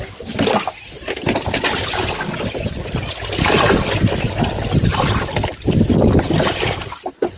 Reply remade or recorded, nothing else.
recorded